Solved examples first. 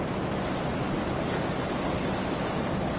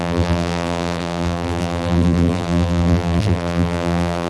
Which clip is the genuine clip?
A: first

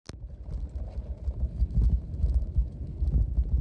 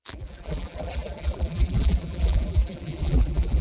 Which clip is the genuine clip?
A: first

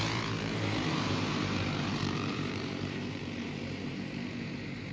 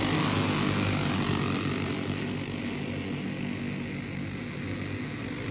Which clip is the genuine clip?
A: second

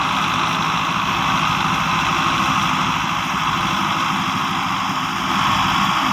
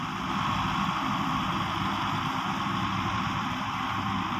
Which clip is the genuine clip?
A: first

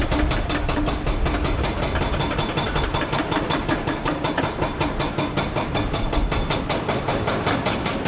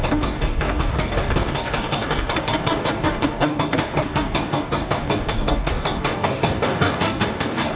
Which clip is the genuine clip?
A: first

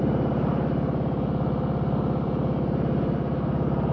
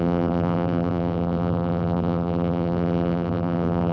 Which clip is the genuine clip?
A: first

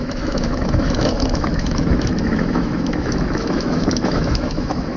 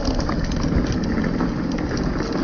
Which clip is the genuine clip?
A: second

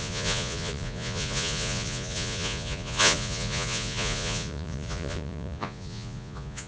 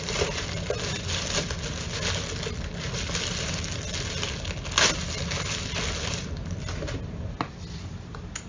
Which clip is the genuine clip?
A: second